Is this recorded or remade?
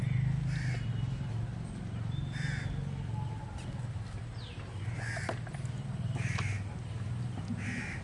recorded